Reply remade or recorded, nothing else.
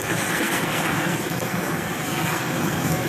remade